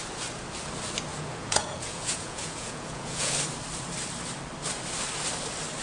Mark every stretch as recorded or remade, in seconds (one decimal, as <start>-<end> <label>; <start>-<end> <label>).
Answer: 0.0-1.1 recorded; 1.1-3.3 remade; 3.3-5.8 recorded